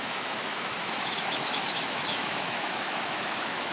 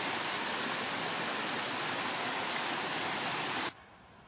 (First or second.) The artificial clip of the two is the first